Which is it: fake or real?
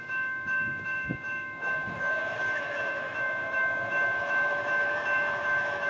fake